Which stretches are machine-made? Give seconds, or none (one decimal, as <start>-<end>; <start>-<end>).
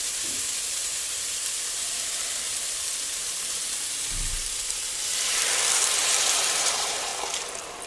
0.0-5.4; 6.0-7.1